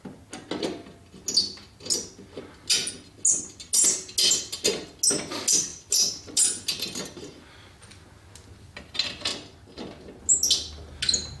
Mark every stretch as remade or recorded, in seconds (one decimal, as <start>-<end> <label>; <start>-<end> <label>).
0.0-11.4 recorded